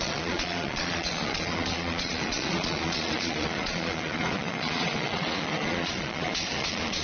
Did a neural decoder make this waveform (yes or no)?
yes